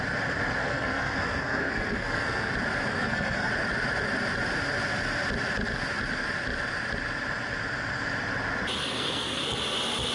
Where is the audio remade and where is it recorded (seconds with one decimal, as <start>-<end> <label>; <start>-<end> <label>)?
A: 0.0-0.6 recorded; 0.6-2.5 remade; 2.5-2.9 recorded; 2.9-3.5 remade; 3.5-8.8 recorded; 8.8-9.4 remade; 9.4-10.1 recorded